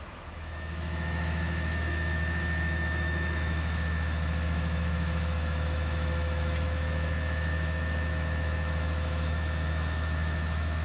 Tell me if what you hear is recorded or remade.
remade